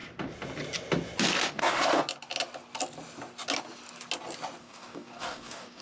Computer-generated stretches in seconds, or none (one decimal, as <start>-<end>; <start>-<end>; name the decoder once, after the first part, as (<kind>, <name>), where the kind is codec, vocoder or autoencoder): 1.5-1.9 (codec, DAC); 4.6-5.8